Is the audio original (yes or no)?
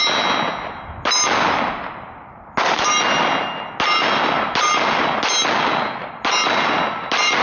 yes